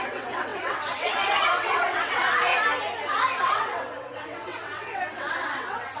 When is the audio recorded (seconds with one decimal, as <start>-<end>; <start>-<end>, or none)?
2.5-3.4